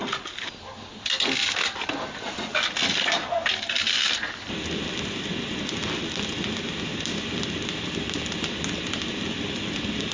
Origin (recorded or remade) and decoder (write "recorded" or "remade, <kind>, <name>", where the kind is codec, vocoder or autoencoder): recorded